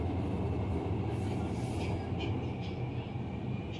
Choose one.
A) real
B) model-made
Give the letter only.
A